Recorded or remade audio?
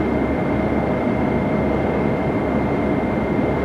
recorded